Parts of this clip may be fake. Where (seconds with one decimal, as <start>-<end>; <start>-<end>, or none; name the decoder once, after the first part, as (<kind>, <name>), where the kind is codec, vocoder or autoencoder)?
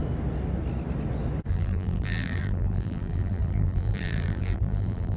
1.5-5.2 (vocoder, BigVGAN v2)